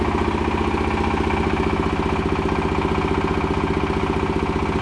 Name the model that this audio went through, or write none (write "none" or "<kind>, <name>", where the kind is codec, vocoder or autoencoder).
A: none